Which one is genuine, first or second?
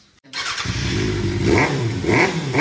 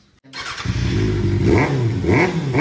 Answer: second